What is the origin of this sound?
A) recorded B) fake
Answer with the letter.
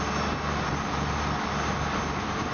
A